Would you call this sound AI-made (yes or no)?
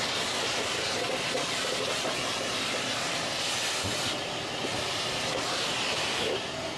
yes